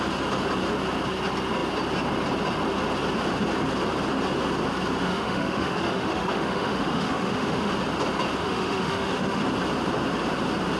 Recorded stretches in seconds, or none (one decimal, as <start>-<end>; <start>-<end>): 0.0-5.1; 7.7-8.4; 9.4-10.8